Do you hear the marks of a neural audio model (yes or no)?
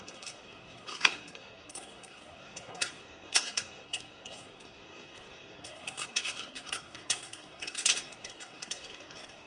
yes